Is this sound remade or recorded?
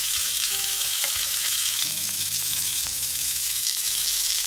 remade